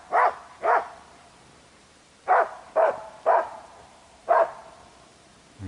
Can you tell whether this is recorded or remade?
remade